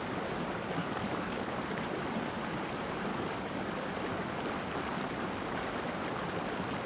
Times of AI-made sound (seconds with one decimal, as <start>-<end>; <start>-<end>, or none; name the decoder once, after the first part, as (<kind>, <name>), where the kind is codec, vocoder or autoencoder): 0.8-1.5 (codec, DAC); 3.1-3.7